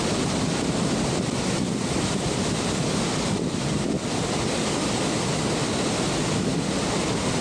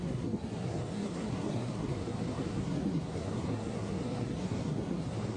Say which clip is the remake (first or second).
second